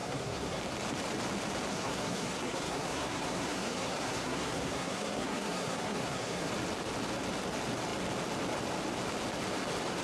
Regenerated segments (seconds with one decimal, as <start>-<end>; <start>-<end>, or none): 0.0-0.6; 1.7-6.5